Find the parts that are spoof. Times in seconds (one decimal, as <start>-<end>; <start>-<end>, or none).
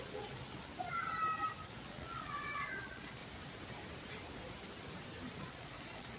0.0-0.7; 1.7-3.2; 5.4-6.2